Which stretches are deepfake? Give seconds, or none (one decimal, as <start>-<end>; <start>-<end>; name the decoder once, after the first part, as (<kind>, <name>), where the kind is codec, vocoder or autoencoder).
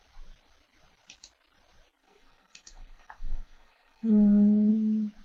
2.0-4.7 (codec, SNAC)